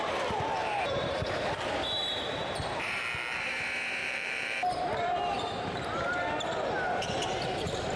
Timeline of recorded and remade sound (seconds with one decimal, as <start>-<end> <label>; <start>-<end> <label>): 0.0-0.6 recorded; 0.6-3.0 remade; 3.0-4.0 recorded; 4.0-5.8 remade; 5.8-8.0 recorded